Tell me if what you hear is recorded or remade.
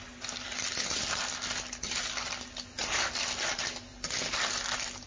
recorded